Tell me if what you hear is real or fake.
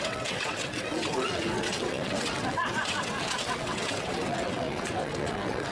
fake